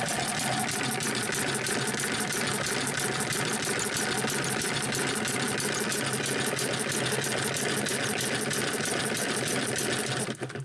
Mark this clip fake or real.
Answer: real